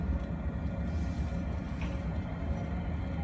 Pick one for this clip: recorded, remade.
recorded